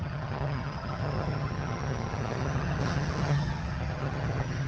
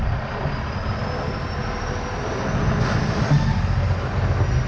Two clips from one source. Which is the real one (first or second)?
second